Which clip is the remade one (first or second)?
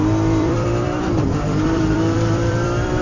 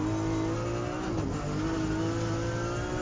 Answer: first